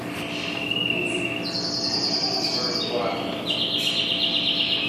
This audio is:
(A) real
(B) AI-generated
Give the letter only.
A